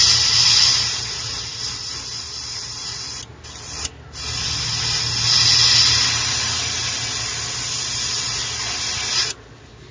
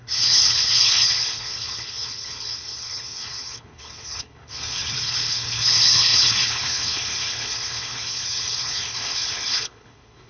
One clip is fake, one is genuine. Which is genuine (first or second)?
first